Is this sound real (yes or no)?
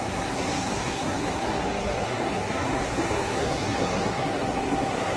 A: no